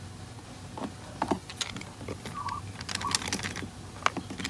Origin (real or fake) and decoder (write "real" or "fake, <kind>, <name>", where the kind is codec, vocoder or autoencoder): real